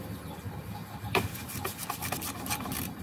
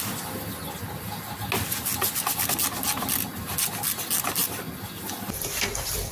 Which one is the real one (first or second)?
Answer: second